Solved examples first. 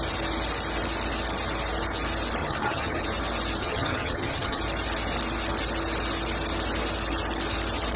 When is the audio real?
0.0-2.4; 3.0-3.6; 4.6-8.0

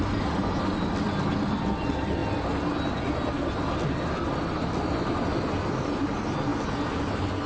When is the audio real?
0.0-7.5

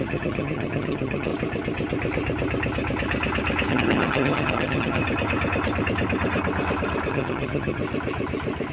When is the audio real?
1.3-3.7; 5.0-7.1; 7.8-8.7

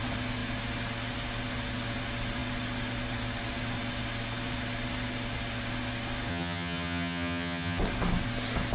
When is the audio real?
0.0-6.3; 7.8-8.7

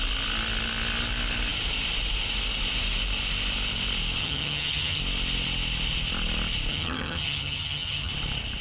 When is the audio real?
0.0-4.2; 5.0-6.7; 8.1-8.6

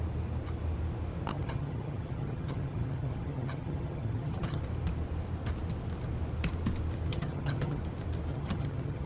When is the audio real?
0.0-1.3; 4.6-7.1; 7.8-8.3